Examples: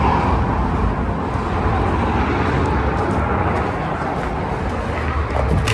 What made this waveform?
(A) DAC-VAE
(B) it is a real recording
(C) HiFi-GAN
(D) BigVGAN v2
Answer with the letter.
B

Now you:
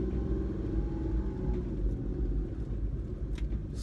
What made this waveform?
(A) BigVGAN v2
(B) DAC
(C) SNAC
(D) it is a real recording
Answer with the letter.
D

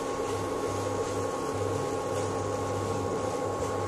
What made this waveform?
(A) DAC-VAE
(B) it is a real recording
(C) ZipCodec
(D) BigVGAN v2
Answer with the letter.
B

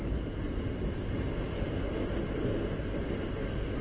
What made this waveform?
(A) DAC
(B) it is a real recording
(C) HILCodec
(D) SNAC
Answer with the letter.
B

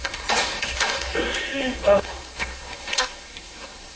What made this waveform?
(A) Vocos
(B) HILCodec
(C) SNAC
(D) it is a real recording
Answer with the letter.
C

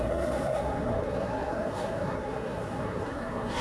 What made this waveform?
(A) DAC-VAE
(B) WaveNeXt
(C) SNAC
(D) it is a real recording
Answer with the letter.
C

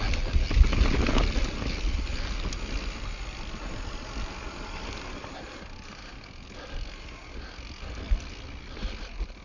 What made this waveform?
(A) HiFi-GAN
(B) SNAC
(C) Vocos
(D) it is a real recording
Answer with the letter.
D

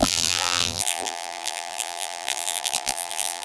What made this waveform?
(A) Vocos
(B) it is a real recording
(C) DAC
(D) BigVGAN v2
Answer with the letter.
D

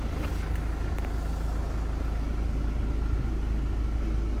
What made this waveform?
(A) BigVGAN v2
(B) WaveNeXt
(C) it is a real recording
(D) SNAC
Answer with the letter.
C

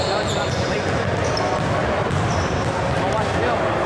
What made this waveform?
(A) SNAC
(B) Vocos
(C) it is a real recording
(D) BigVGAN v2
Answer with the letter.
C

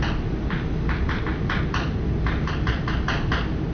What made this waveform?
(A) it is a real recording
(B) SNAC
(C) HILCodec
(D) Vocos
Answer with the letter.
A